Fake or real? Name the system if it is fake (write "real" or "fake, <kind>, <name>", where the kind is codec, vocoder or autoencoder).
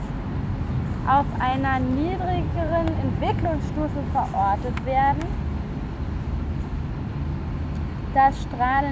real